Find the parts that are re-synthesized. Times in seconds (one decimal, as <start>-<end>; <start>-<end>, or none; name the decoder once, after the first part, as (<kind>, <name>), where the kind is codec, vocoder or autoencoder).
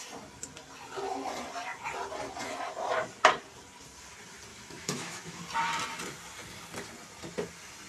4.5-5.4 (autoencoder, DAC-VAE)